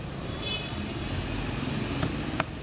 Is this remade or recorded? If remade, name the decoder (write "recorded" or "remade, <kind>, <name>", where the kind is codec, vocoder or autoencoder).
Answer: recorded